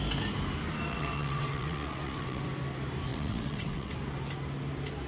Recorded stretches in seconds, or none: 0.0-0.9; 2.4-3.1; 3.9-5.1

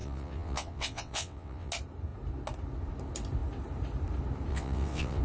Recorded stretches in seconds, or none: 1.7-4.5